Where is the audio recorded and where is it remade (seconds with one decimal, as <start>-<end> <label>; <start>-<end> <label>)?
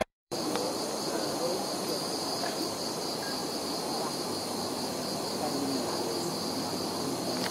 0.0-0.7 remade; 0.7-1.5 recorded; 1.5-2.7 remade; 2.7-7.5 recorded